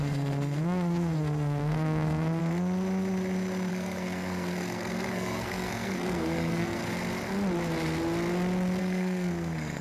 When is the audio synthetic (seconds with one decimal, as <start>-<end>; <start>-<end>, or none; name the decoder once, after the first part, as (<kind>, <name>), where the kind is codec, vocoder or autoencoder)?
0.0-2.4 (codec, SNAC); 3.7-6.8; 8.8-9.8